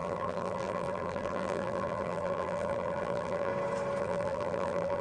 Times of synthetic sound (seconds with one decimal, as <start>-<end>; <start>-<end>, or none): 0.0-3.5; 4.0-5.0